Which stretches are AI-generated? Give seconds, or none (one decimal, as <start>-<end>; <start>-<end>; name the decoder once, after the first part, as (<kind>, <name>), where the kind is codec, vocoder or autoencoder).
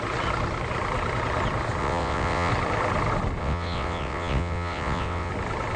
1.8-2.5 (vocoder, WaveNeXt); 3.4-5.3